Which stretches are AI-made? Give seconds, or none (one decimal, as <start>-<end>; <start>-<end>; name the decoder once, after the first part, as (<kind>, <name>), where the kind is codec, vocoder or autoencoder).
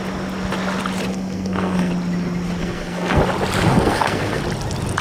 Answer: 1.1-1.9 (codec, SNAC); 2.6-3.2; 3.6-4.4